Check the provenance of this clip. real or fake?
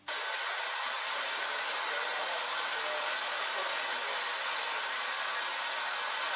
real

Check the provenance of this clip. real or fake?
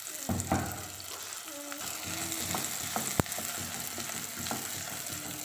real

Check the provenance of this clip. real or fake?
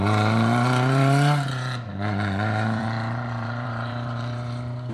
fake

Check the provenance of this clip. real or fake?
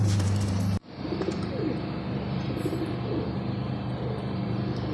fake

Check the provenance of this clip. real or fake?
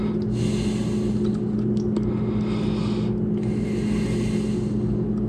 real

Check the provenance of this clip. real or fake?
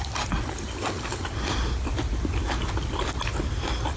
real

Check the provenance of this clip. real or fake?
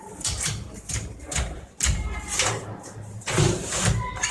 fake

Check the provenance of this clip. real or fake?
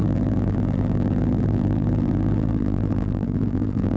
fake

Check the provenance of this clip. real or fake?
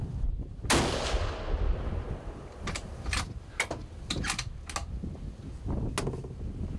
real